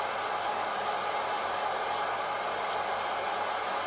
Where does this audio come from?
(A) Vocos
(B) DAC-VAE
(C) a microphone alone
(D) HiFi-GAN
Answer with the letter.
C